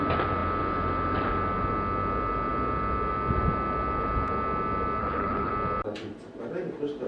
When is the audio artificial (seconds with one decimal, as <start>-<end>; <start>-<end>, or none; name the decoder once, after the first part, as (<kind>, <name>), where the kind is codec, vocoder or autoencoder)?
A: 5.0-5.5 (codec, HILCodec)